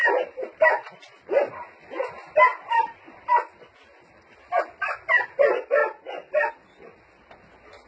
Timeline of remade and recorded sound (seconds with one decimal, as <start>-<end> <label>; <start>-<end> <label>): 0.0-1.5 remade; 1.5-2.5 recorded; 2.5-3.2 remade; 3.2-7.9 recorded